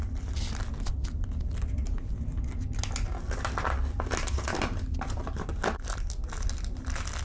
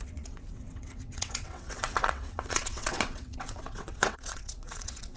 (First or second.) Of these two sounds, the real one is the first